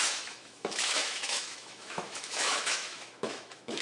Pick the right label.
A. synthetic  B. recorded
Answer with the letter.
A